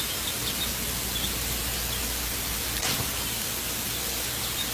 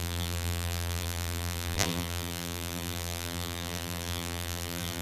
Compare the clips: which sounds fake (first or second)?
second